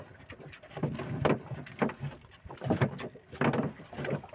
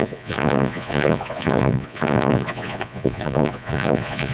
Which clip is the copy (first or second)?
second